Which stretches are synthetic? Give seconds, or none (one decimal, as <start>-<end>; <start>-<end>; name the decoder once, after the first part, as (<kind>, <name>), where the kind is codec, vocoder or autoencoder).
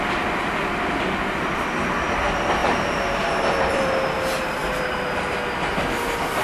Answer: 2.6-4.8 (vocoder, BigVGAN v2)